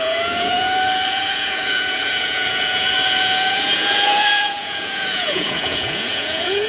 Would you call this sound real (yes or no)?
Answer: no